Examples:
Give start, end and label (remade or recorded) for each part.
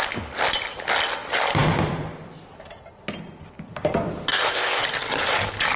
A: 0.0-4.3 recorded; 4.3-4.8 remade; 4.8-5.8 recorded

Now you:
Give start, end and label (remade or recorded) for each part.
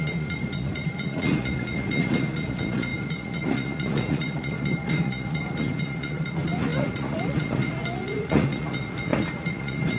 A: 0.0-10.0 remade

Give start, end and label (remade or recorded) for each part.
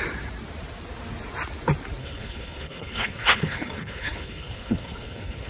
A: 0.0-2.0 recorded; 2.0-5.5 remade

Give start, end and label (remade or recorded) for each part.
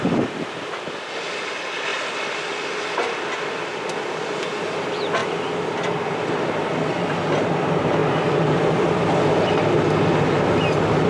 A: 0.0-1.9 recorded; 1.9-2.7 remade; 2.7-8.0 recorded; 8.0-9.6 remade; 9.6-11.1 recorded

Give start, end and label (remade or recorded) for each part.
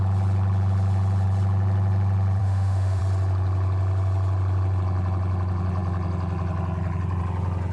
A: 0.0-2.4 recorded; 2.4-3.0 remade; 3.0-7.7 recorded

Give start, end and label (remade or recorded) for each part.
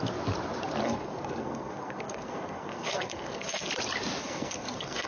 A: 0.0-0.8 recorded; 0.8-3.7 remade; 3.7-4.2 recorded; 4.2-5.1 remade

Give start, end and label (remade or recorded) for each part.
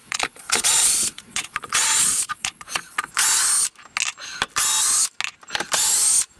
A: 0.0-3.1 remade; 3.1-6.4 recorded